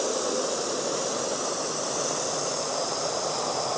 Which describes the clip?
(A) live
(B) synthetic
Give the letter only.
A